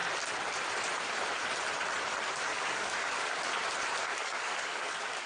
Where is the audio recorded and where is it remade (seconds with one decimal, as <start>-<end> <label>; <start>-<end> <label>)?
0.0-2.5 recorded; 2.5-3.4 remade; 3.4-4.1 recorded; 4.1-5.3 remade